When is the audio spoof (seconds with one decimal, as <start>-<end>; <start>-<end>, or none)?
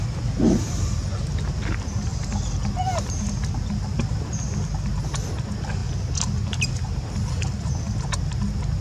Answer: none